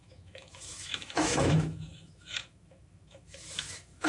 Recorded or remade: remade